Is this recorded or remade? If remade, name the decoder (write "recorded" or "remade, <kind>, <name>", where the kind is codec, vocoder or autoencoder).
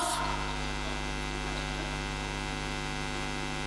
recorded